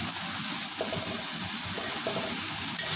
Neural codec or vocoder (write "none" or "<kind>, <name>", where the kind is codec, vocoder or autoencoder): none